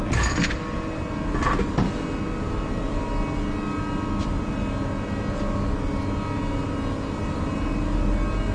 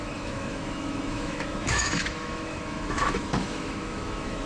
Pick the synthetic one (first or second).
second